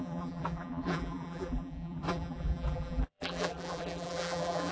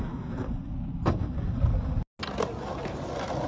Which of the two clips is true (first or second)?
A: second